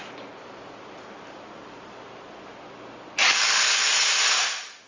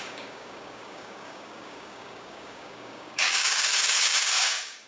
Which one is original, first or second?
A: first